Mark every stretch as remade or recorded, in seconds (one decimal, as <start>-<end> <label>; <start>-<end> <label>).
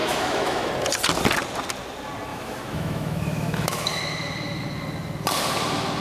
0.0-0.7 remade; 0.7-2.3 recorded; 2.3-4.0 remade; 4.0-6.0 recorded